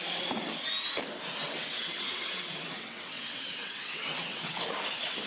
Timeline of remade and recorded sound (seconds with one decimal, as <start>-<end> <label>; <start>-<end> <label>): 0.0-1.4 recorded; 1.4-4.6 remade; 4.6-5.3 recorded